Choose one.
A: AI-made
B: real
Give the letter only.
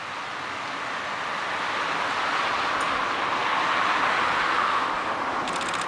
B